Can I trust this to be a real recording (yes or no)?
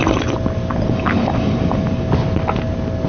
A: no